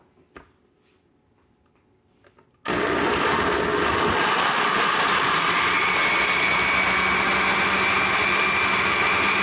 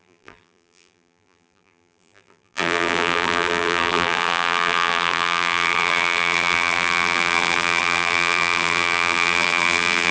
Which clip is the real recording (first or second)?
first